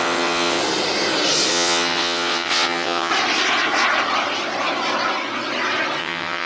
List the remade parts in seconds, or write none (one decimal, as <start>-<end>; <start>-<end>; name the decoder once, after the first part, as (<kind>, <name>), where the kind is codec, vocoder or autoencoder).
0.0-0.6 (vocoder, WaveNeXt); 1.5-3.1; 6.0-6.5